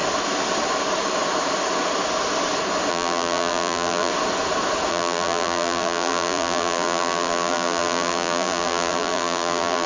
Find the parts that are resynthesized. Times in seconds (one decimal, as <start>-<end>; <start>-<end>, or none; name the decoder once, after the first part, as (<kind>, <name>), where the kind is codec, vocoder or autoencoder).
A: 2.9-4.1 (vocoder, BigVGAN v2); 4.9-9.9

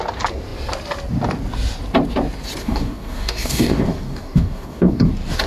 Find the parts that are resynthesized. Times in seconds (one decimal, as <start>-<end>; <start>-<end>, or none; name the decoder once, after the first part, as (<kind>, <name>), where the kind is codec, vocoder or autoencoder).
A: 2.6-5.1 (codec, DAC)

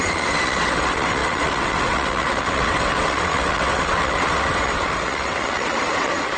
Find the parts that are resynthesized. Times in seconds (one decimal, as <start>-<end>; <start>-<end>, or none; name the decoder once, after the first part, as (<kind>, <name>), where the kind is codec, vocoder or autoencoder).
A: 0.0-6.4 (vocoder, WaveNeXt)

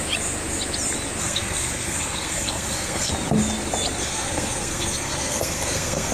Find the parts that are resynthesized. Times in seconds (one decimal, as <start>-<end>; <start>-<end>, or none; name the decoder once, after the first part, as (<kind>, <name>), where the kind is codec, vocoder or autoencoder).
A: 1.2-3.1 (codec, SNAC); 4.0-6.1

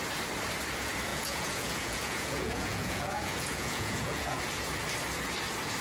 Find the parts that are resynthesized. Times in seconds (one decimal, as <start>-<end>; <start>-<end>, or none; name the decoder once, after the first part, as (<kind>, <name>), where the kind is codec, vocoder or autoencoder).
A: 1.1-4.4 (vocoder, Vocos)

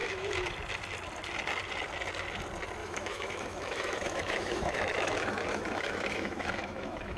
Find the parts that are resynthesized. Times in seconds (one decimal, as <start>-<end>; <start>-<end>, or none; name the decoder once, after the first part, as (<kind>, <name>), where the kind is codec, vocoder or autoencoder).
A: 0.0-0.5 (autoencoder, DAC-VAE); 2.8-7.2